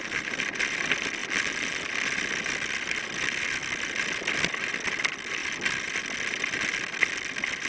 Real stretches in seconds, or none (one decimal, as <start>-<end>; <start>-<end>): 0.0-1.2; 1.9-7.7